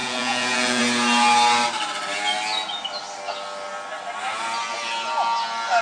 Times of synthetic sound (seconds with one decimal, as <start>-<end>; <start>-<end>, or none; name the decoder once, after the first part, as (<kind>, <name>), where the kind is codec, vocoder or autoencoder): 0.0-0.8 (vocoder, Vocos)